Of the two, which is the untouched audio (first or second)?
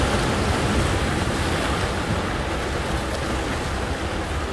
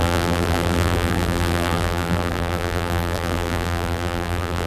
first